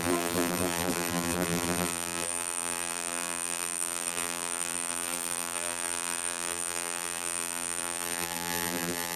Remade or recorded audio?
remade